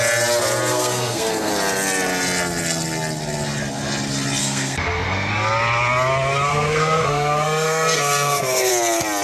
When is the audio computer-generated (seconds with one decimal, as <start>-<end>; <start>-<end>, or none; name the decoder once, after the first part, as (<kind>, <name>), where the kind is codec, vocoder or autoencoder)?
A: 0.7-1.5 (codec, SNAC); 4.4-5.3; 6.5-8.7